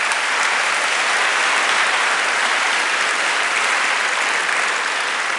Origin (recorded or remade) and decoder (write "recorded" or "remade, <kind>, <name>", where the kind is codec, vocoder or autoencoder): recorded